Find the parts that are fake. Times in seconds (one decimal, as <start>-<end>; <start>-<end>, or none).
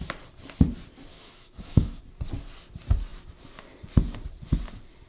1.1-2.0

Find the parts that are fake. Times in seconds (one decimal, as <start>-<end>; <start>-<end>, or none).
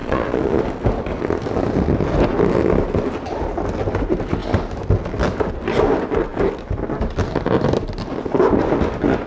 0.0-0.6